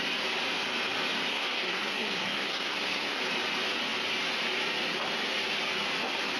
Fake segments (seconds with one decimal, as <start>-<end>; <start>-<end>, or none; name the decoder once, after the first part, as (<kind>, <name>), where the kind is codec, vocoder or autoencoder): 1.3-3.2 (codec, SNAC)